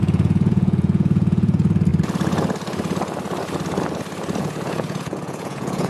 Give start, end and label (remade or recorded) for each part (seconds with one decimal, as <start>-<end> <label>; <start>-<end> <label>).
0.0-1.9 remade; 1.9-4.4 recorded; 4.4-5.9 remade